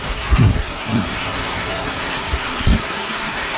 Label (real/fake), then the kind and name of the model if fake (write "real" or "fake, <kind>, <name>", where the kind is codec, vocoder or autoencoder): fake, codec, SNAC